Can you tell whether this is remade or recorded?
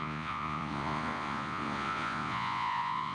remade